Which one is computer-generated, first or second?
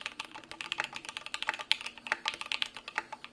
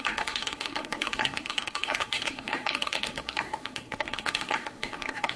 second